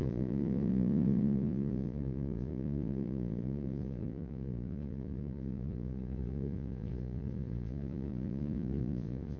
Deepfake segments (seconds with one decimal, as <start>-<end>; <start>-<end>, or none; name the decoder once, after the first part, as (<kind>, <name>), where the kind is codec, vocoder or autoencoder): 0.0-9.4 (vocoder, Vocos)